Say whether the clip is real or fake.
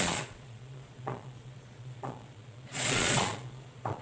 fake